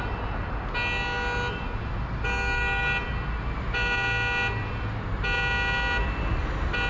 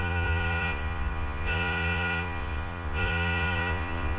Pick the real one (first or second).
first